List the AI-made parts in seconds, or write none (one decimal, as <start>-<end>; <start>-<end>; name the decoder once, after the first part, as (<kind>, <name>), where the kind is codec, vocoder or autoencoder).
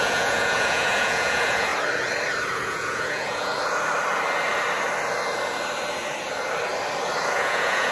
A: 0.0-1.7 (vocoder, Vocos); 2.5-3.5; 7.3-7.9